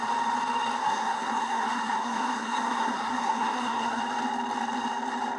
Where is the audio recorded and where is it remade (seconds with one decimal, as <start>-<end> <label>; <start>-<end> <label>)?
0.0-0.8 recorded; 0.8-4.0 remade; 4.0-5.4 recorded